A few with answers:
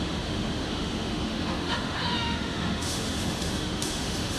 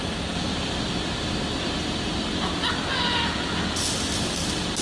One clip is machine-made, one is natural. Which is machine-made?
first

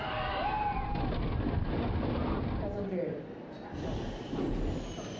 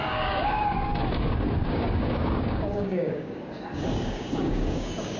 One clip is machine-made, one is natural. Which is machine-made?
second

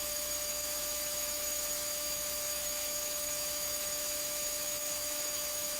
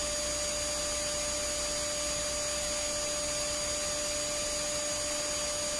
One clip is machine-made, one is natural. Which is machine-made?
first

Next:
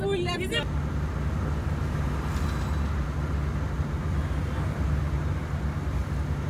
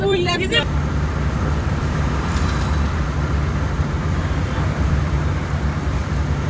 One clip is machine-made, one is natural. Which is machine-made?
second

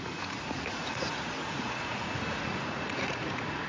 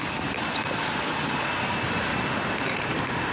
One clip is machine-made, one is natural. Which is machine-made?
first